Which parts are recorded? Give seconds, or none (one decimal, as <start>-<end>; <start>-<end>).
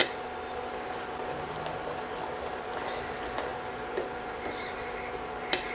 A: 0.0-5.7